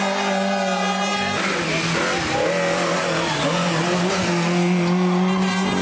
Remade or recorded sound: recorded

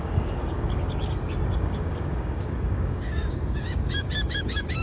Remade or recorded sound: remade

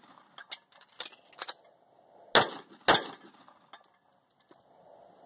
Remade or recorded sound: recorded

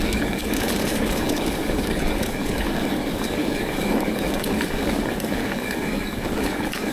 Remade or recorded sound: remade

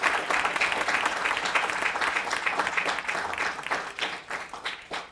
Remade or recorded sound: recorded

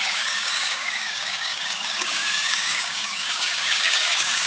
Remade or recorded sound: remade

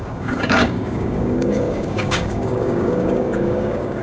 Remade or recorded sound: remade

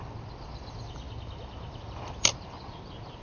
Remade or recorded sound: recorded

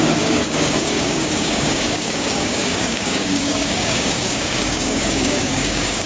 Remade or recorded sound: remade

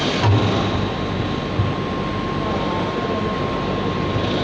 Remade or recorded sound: recorded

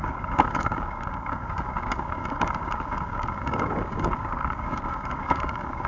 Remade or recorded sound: remade